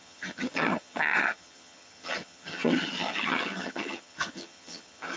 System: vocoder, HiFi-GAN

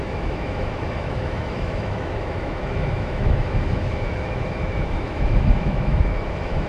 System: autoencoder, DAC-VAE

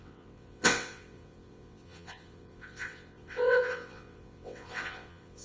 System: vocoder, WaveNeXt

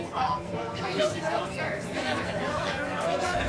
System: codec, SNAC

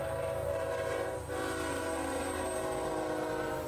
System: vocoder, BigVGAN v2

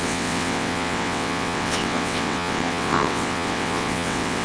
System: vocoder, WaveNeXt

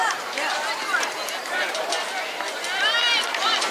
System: vocoder, BigVGAN v2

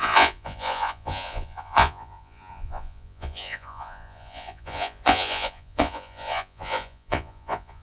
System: vocoder, Vocos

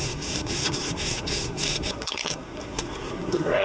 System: codec, SNAC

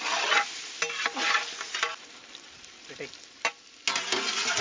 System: none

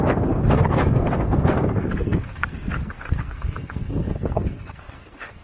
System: codec, SNAC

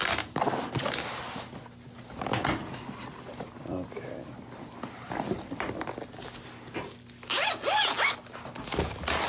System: none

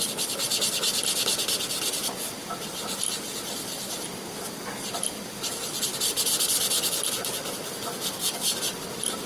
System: none